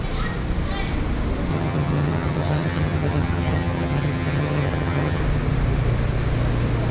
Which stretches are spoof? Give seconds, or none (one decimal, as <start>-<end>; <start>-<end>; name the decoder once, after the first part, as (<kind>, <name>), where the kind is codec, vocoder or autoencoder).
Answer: 1.5-5.2 (vocoder, HiFi-GAN)